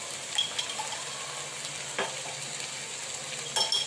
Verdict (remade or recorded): recorded